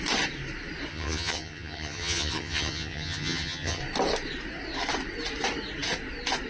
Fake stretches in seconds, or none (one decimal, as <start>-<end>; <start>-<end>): 0.9-3.8